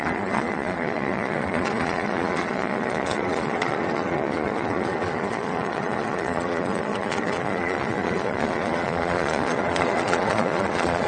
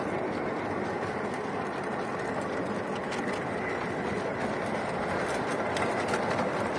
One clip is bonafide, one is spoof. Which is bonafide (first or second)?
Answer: second